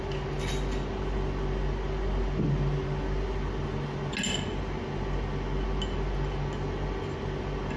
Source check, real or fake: real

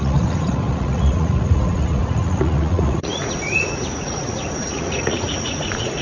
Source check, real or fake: fake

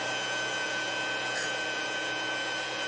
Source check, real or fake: fake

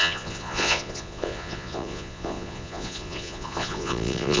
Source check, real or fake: fake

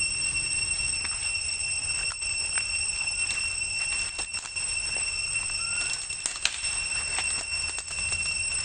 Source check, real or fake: real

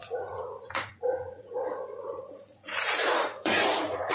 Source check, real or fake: fake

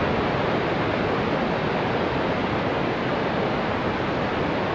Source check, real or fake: real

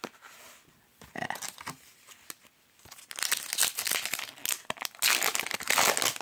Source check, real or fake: real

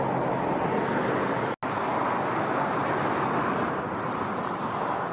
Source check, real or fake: real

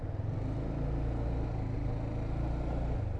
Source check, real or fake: real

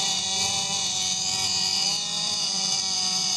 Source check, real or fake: fake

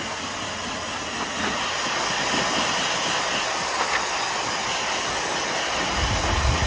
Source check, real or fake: real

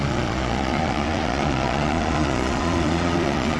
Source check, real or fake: fake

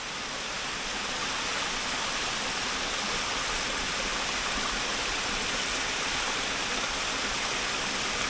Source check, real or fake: real